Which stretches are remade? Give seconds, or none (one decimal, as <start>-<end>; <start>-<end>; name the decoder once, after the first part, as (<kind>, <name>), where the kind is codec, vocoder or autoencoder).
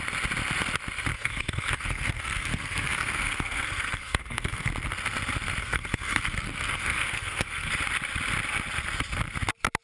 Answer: 1.1-4.7 (codec, SNAC); 5.6-7.7